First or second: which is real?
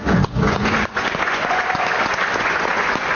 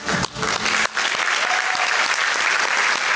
second